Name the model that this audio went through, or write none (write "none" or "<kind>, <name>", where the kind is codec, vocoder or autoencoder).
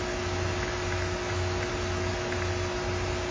none